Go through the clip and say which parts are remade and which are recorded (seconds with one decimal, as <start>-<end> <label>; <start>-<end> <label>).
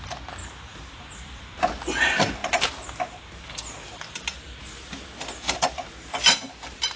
0.0-0.4 recorded; 0.4-1.4 remade; 1.4-7.0 recorded